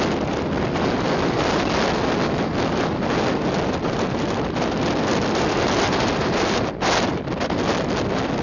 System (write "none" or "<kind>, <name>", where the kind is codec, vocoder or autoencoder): none